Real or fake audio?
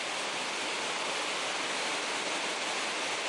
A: real